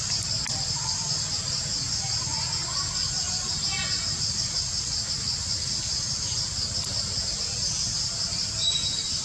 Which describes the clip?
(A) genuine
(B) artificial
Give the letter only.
A